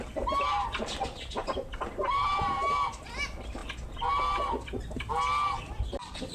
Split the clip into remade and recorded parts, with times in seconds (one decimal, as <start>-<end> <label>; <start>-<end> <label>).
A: 0.0-6.3 recorded